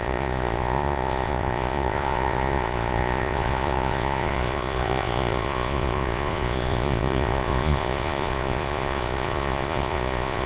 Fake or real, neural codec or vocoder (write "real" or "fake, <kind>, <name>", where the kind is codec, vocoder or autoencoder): fake, vocoder, Vocos